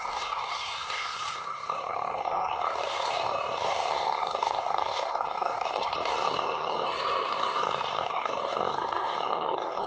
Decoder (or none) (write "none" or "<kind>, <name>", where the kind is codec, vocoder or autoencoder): codec, SNAC